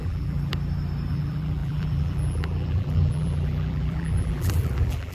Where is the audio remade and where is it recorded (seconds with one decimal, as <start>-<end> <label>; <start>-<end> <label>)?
0.0-0.5 remade; 0.5-1.1 recorded; 1.1-5.1 remade

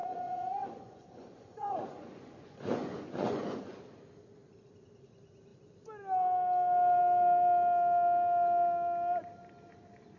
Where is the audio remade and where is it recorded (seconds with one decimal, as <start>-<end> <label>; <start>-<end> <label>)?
0.0-3.8 remade; 3.8-10.2 recorded

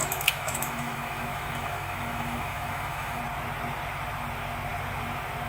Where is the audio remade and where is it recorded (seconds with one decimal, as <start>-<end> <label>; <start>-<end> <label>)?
0.0-3.2 remade; 3.2-5.5 recorded

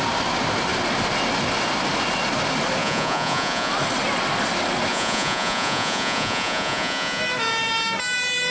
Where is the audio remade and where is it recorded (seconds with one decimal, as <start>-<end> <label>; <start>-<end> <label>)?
0.0-2.8 recorded; 2.8-3.7 remade; 3.7-4.9 recorded; 4.9-7.2 remade; 7.2-8.5 recorded

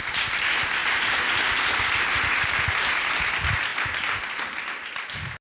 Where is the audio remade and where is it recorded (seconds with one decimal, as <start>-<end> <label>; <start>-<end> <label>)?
0.0-5.4 recorded

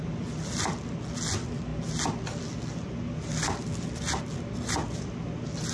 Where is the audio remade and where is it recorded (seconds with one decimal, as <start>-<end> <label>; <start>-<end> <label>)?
0.0-5.7 recorded

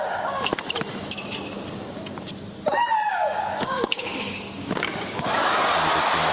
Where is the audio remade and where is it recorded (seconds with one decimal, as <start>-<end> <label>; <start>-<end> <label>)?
0.0-0.5 remade; 0.5-1.7 recorded; 1.7-2.3 remade; 2.3-3.1 recorded; 3.1-5.6 remade; 5.6-6.3 recorded

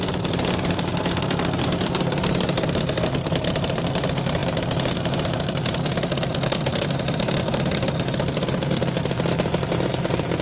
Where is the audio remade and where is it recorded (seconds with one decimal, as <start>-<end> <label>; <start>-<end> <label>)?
0.0-0.9 remade; 0.9-1.6 recorded; 1.6-10.4 remade